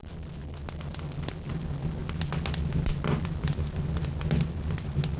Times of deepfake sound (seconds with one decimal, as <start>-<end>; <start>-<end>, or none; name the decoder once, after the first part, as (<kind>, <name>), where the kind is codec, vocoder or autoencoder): none

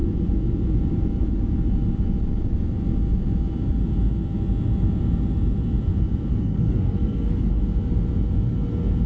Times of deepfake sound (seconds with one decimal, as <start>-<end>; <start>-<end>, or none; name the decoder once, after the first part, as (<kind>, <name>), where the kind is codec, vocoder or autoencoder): 6.3-7.6 (codec, SNAC)